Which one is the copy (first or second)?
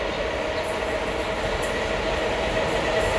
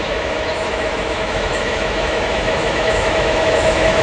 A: second